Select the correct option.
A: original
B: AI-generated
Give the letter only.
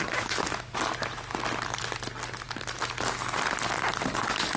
A